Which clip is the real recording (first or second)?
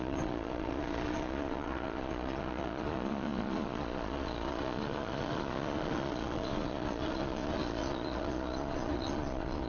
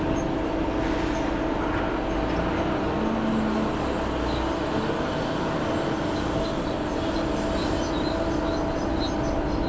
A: second